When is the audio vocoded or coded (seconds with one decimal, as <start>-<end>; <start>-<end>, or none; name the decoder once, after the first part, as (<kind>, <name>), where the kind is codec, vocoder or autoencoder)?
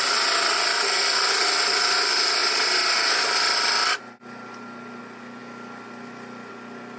5.4-6.5 (vocoder, BigVGAN v2)